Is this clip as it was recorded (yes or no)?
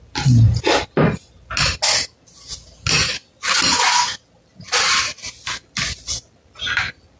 yes